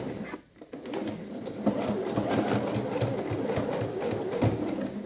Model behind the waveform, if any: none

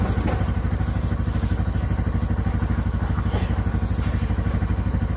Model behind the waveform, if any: none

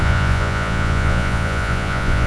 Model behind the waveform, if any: vocoder, Vocos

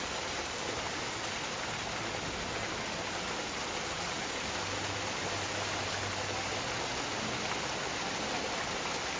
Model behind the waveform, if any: none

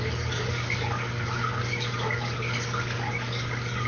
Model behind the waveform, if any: codec, DAC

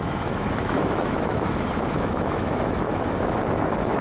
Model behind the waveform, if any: autoencoder, DAC-VAE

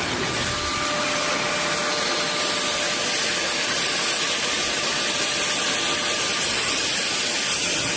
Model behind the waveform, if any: none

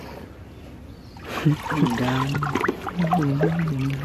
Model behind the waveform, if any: vocoder, BigVGAN v2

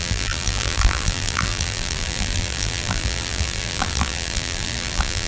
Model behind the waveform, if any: vocoder, BigVGAN v2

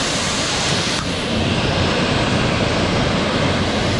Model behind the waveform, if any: none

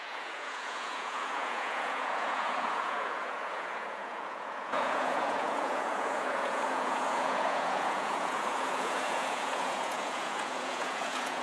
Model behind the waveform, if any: vocoder, Vocos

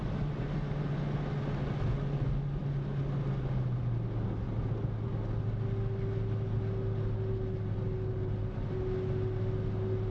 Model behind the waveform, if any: none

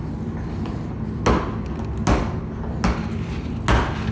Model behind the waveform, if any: none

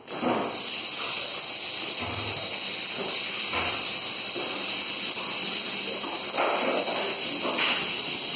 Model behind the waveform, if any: none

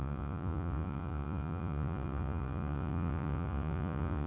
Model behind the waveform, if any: vocoder, Vocos